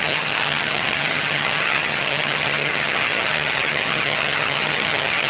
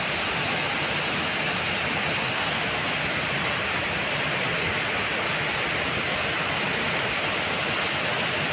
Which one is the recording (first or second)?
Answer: second